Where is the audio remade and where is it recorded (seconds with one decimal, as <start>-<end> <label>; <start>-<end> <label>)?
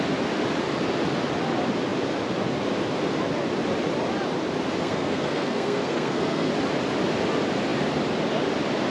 0.0-4.8 recorded; 4.8-6.5 remade; 6.5-8.9 recorded